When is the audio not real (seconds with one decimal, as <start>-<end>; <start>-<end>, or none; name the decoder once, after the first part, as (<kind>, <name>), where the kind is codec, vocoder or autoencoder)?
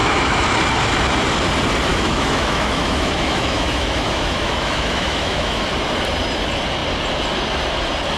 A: 0.0-0.5 (autoencoder, DAC-VAE); 1.9-5.6